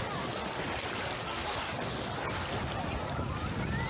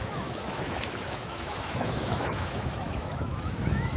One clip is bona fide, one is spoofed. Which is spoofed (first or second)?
second